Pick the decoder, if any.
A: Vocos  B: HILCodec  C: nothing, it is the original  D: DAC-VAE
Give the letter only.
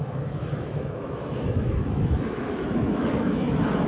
D